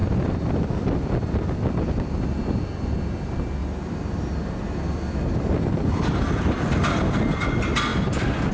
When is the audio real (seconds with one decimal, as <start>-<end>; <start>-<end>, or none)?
0.0-3.6; 7.5-8.5

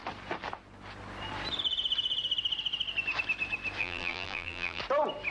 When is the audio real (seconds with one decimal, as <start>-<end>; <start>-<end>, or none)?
0.0-3.8; 4.8-5.3

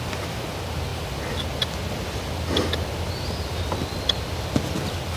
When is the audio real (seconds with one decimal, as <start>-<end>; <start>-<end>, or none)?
0.0-5.2

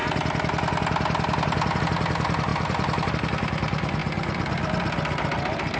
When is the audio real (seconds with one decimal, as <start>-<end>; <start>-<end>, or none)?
0.0-5.8